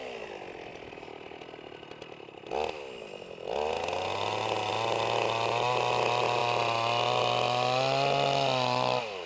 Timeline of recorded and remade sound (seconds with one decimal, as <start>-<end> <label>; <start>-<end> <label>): 0.0-9.3 recorded